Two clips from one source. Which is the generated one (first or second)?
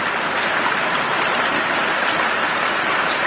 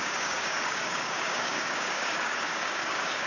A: second